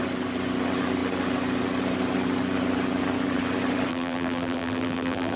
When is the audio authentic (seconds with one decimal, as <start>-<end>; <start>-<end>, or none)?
0.0-3.9